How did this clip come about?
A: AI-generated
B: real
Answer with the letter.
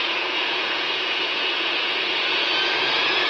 A